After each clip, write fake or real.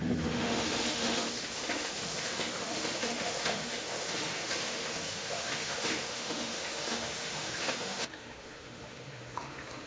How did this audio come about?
fake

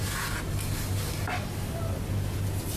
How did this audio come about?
real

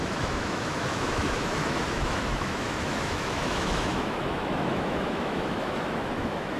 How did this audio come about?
fake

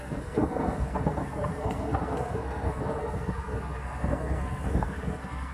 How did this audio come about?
fake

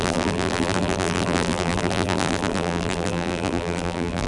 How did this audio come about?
fake